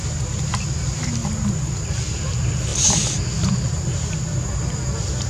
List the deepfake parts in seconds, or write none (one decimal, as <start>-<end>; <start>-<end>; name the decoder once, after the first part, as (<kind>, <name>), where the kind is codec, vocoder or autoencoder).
none